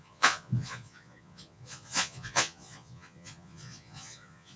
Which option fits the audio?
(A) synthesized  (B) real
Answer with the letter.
A